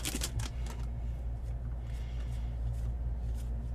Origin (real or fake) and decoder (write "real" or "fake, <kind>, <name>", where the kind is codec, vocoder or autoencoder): real